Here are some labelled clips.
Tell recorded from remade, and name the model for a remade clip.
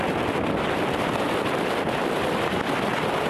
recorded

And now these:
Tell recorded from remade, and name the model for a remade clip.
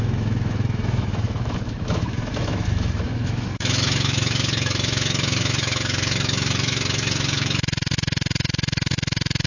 remade, autoencoder, DAC-VAE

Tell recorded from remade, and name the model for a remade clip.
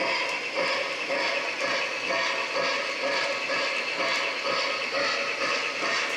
recorded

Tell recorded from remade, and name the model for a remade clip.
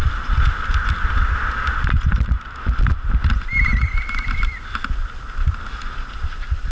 recorded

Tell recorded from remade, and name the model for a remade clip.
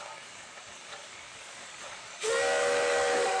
remade, codec, DAC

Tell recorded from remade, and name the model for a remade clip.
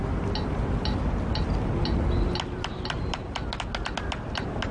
recorded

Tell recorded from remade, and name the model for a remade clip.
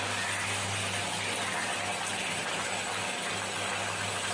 recorded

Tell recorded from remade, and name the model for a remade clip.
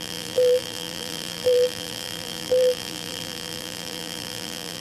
remade, vocoder, BigVGAN v2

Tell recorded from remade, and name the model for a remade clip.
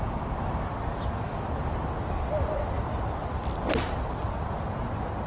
recorded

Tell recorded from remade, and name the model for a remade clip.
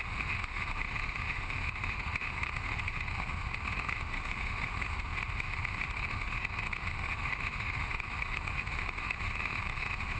remade, autoencoder, DAC-VAE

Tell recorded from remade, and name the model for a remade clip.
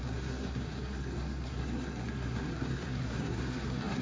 remade, codec, SNAC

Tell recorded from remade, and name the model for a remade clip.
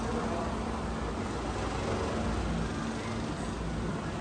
recorded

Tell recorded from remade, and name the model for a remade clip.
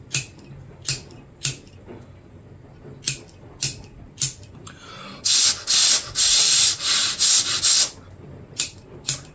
recorded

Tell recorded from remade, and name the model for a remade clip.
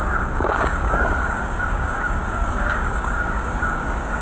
remade, codec, DAC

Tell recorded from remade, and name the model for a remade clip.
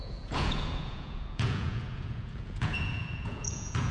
remade, vocoder, Vocos